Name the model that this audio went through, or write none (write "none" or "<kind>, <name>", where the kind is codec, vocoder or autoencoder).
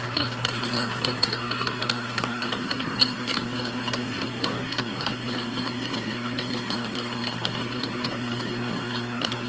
codec, SNAC